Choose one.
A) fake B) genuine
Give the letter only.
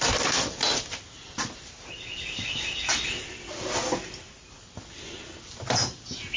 B